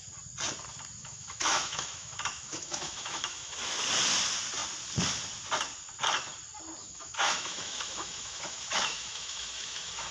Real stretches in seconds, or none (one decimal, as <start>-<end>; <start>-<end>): 0.0-1.0; 3.9-6.8